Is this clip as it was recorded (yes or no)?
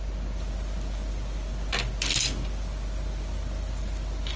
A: yes